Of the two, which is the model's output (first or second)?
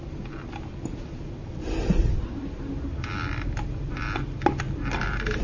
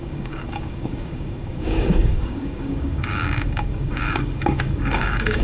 second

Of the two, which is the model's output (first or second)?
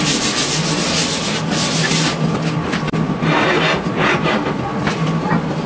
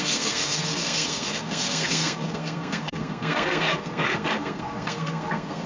second